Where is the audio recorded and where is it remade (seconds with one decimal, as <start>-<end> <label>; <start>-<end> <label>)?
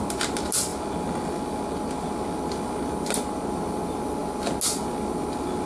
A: 0.0-5.7 recorded